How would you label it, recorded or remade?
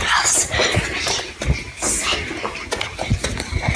recorded